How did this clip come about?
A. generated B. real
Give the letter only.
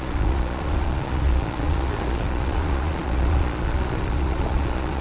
A